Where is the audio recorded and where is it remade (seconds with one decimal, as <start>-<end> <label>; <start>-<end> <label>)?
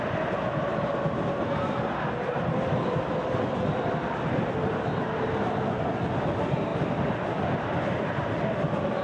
0.0-9.0 recorded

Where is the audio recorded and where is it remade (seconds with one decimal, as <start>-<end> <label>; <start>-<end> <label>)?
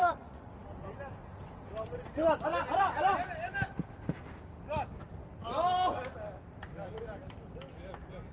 0.0-0.5 remade; 0.5-8.3 recorded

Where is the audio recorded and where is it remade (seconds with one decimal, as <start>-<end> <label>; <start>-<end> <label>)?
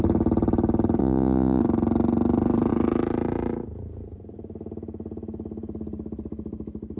0.0-1.0 recorded; 1.0-1.6 remade; 1.6-7.0 recorded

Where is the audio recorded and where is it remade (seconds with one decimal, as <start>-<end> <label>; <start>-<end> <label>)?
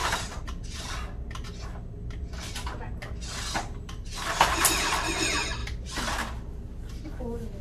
0.0-0.9 remade; 0.9-5.6 recorded; 5.6-6.2 remade; 6.2-7.6 recorded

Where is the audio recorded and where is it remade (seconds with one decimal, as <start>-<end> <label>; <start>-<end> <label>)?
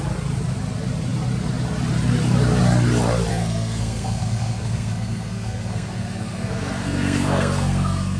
0.0-3.3 recorded; 3.3-8.2 remade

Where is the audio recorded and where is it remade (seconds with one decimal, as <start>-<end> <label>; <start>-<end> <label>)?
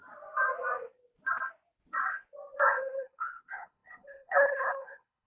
0.0-2.8 recorded; 2.8-5.3 remade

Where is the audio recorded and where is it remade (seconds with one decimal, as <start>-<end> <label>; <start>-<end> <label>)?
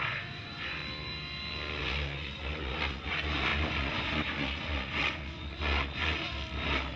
0.0-0.8 remade; 0.8-1.8 recorded; 1.8-6.2 remade; 6.2-7.0 recorded